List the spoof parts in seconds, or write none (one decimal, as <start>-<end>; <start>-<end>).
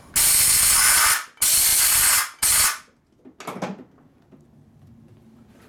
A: none